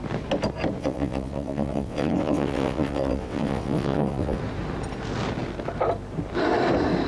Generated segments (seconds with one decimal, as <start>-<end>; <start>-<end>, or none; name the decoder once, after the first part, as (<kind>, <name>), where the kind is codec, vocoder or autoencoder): 0.8-4.4 (vocoder, WaveNeXt)